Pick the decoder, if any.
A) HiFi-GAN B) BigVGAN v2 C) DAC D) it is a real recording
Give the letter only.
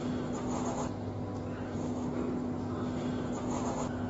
D